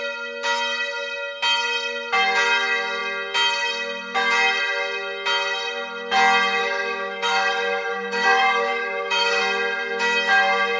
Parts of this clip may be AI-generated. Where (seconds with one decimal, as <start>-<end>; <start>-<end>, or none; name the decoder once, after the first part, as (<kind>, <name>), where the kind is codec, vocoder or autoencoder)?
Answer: 6.6-9.4 (codec, DAC)